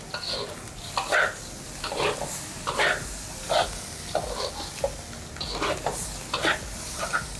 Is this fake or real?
real